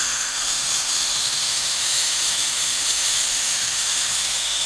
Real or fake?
fake